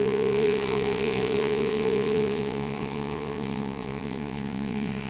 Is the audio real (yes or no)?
no